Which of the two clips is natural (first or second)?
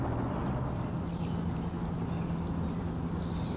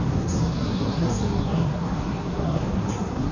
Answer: first